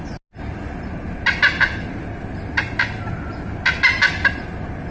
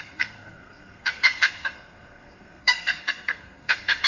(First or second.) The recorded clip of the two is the first